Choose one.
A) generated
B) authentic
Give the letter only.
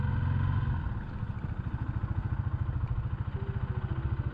B